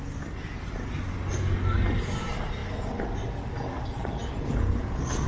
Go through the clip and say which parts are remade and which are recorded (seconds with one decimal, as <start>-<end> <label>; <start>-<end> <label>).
0.0-5.3 recorded